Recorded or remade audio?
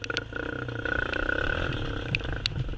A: recorded